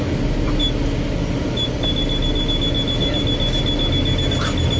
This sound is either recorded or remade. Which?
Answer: recorded